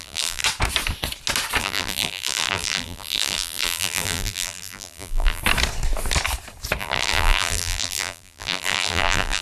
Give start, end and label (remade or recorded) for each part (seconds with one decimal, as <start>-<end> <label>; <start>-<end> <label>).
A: 0.0-0.4 remade; 0.4-1.6 recorded; 1.6-5.4 remade; 5.4-6.8 recorded; 6.8-9.4 remade

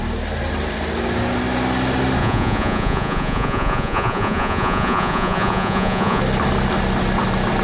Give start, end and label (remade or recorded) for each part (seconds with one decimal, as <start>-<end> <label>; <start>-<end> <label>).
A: 0.0-2.2 recorded; 2.2-6.2 remade; 6.2-7.6 recorded

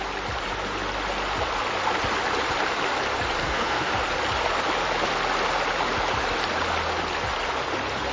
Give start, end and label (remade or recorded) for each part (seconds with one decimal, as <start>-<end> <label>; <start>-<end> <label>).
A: 0.0-3.4 recorded; 3.4-3.9 remade; 3.9-8.1 recorded

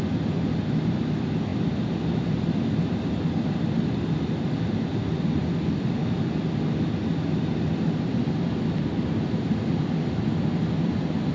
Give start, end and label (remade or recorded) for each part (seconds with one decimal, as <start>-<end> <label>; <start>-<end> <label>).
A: 0.0-11.3 recorded

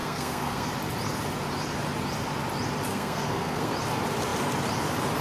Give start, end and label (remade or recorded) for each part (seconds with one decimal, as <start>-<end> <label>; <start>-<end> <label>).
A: 0.0-0.7 remade; 0.7-2.9 recorded; 2.9-3.7 remade; 3.7-5.2 recorded